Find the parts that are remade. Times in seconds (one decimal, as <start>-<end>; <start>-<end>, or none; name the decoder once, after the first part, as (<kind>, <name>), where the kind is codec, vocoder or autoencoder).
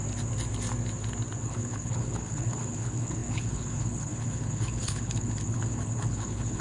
1.4-6.6 (codec, HILCodec)